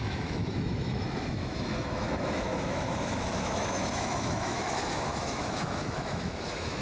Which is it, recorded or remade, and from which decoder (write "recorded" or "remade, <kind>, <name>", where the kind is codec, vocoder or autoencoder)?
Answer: remade, autoencoder, DAC-VAE